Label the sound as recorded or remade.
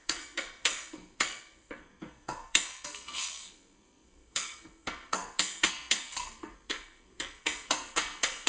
remade